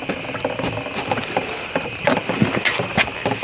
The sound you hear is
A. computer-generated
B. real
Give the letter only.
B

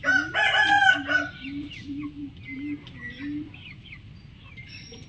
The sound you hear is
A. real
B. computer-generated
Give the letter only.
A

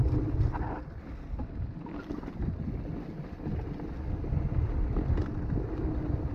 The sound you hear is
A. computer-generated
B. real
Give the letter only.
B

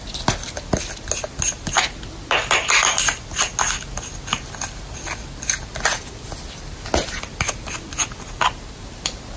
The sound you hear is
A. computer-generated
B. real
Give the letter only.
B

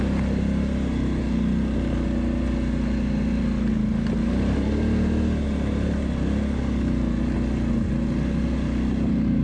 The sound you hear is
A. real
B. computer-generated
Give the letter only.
A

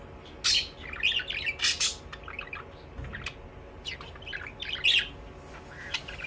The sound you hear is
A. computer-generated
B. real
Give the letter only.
B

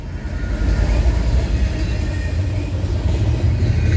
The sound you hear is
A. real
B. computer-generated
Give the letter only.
A